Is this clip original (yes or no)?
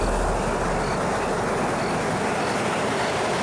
yes